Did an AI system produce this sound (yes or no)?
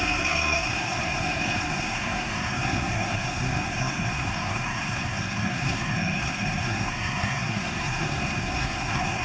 yes